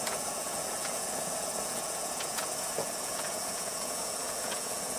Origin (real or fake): fake